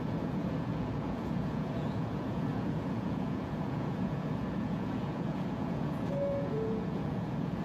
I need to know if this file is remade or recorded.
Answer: remade